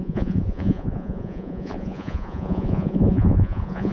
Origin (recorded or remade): remade